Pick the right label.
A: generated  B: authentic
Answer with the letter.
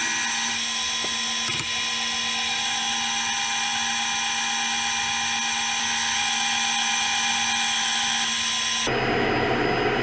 B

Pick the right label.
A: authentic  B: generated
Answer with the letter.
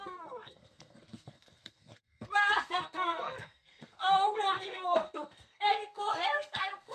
B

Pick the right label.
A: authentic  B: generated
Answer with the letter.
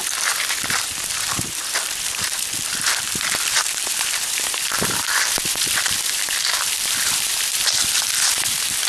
B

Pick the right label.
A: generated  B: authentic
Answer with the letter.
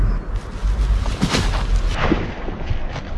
B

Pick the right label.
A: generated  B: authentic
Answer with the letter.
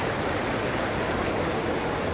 B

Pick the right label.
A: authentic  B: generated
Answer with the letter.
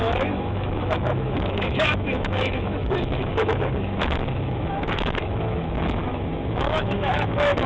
B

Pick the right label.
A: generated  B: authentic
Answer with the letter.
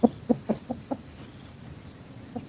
B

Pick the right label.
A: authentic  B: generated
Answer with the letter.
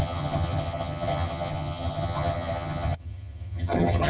B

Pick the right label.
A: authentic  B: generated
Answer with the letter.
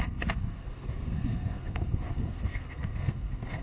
B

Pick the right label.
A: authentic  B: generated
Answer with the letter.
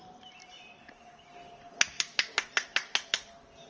A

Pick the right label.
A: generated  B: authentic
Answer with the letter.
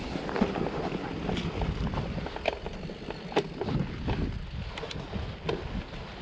B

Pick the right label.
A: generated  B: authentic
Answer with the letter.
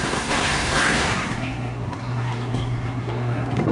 A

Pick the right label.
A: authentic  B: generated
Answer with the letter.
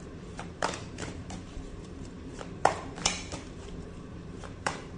B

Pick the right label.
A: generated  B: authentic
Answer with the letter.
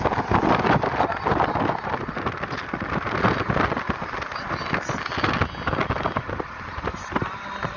B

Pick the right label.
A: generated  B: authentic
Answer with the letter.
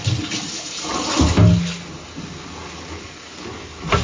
B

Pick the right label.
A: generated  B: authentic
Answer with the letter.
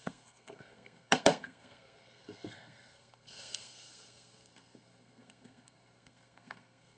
A